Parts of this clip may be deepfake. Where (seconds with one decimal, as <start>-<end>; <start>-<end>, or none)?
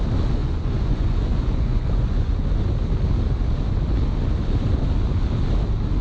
0.4-2.5